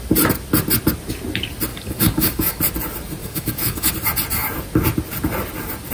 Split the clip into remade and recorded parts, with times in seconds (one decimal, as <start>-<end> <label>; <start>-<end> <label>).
0.0-1.7 recorded; 1.7-2.6 remade; 2.6-3.2 recorded; 3.2-3.9 remade; 3.9-5.9 recorded